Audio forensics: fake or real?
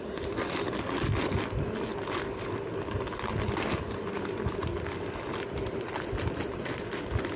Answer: real